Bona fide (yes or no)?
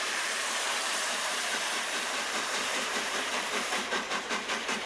no